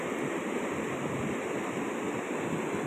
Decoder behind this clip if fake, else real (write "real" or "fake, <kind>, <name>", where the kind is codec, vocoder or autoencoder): real